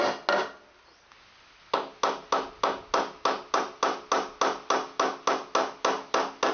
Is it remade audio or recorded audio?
recorded